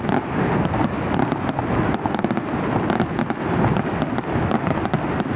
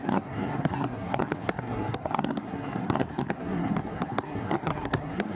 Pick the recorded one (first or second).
first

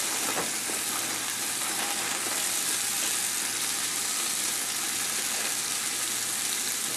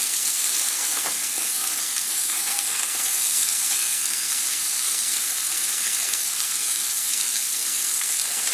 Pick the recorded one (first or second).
first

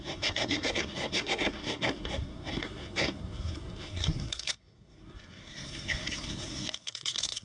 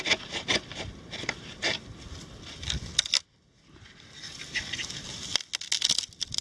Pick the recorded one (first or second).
second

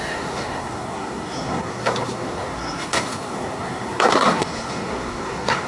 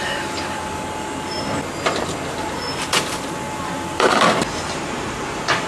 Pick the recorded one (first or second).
second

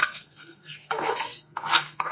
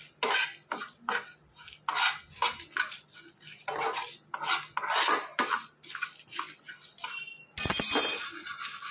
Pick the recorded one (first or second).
second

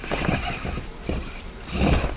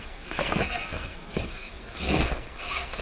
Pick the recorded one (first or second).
first